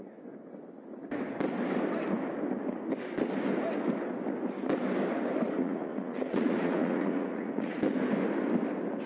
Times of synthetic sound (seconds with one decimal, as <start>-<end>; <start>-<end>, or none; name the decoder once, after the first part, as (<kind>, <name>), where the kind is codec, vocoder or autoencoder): 5.6-7.8 (vocoder, Vocos)